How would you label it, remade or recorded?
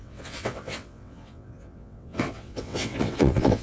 remade